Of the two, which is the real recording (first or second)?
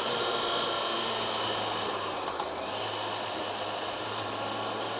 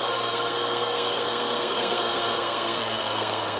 first